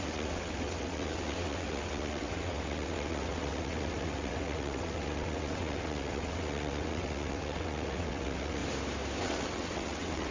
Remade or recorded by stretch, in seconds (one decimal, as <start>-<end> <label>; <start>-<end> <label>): 0.0-8.6 remade; 8.6-9.2 recorded; 9.2-10.3 remade